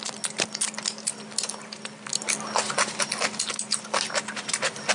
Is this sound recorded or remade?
recorded